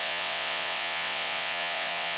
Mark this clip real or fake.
fake